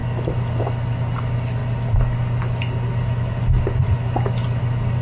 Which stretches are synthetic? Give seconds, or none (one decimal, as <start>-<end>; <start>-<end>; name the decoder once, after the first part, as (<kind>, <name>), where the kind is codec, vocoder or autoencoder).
none